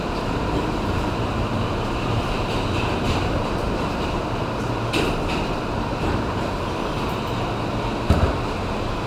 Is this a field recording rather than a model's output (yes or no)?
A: no